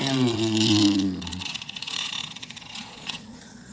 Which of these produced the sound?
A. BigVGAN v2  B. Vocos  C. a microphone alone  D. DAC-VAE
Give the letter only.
B